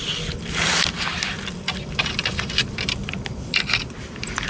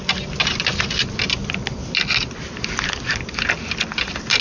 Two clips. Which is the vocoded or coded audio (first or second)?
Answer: first